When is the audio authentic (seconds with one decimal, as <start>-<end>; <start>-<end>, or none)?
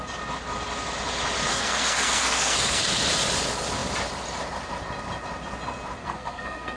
0.0-1.5; 2.8-6.0